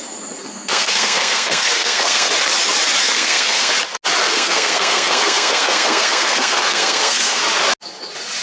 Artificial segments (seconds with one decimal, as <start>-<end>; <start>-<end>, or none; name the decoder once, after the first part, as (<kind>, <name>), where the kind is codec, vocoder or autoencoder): 0.4-2.3 (codec, SNAC); 3.0-3.7; 4.2-7.4